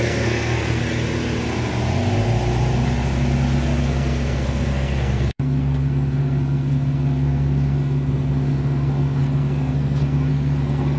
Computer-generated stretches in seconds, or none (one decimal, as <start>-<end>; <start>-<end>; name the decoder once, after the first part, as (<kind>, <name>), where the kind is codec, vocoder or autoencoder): 0.0-0.8 (codec, SNAC); 3.8-11.0